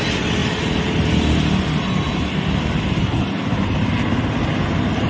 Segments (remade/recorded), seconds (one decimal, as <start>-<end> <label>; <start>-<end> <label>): 0.0-5.1 recorded